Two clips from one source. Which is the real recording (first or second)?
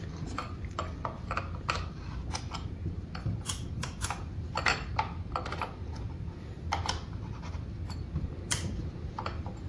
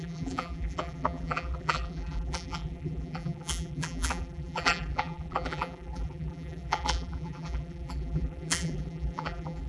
first